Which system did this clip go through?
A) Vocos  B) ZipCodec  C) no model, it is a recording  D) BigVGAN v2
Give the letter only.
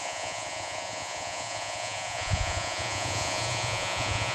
A